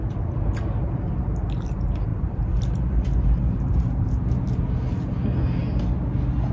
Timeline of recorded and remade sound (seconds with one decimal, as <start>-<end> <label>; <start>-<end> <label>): 0.0-2.1 recorded; 2.1-4.1 remade; 4.1-6.5 recorded